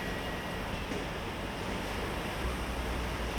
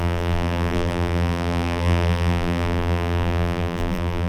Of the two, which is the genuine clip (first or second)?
first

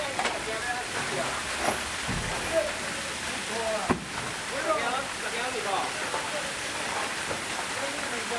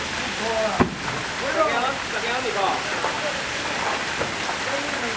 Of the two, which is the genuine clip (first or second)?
second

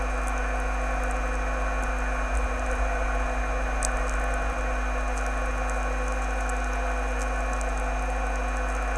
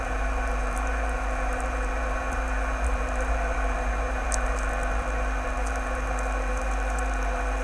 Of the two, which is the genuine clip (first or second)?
first